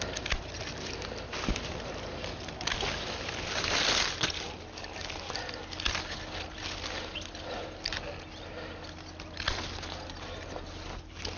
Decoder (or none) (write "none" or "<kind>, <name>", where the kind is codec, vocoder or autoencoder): none